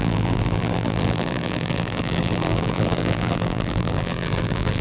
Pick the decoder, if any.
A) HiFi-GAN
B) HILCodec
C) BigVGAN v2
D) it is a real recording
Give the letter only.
C